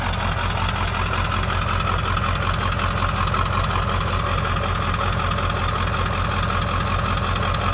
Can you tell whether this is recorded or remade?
recorded